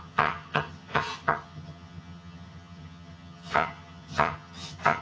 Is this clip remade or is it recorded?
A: remade